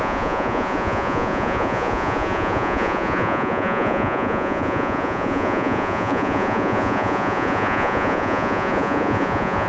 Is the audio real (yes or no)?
no